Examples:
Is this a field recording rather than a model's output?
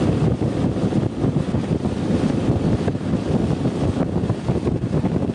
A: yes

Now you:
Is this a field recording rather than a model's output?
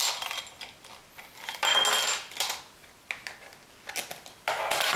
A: yes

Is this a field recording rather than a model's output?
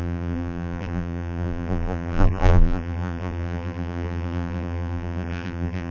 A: no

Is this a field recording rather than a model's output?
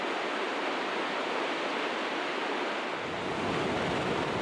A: yes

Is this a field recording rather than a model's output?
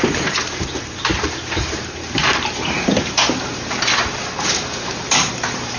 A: no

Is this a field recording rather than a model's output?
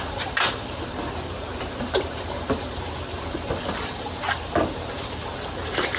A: no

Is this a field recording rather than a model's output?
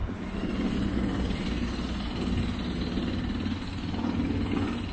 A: yes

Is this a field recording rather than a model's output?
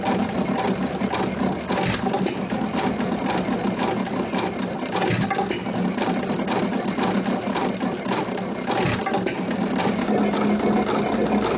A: yes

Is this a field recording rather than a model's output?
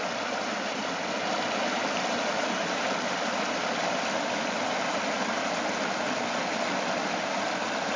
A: yes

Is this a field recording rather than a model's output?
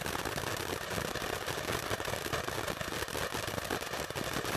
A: yes